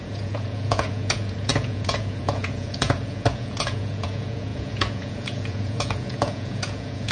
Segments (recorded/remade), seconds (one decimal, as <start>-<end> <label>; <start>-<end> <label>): 0.0-7.1 remade